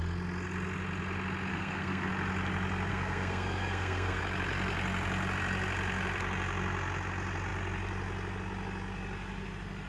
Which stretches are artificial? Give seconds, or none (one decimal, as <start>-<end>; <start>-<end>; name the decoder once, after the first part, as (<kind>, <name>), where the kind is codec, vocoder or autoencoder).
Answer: 1.5-2.1 (codec, SNAC); 2.9-4.2